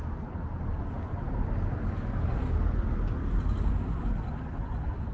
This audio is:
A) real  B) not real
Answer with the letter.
A